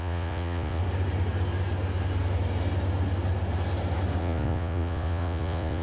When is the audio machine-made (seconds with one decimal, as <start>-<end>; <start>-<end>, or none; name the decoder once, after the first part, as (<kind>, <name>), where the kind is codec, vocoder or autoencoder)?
0.0-0.8 (vocoder, Vocos); 4.2-5.8